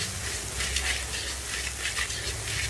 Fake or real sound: real